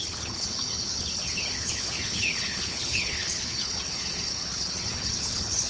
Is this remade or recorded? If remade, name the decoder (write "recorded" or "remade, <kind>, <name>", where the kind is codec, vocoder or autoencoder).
remade, codec, HILCodec